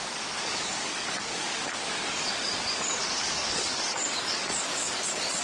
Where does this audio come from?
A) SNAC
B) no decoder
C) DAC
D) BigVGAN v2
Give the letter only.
C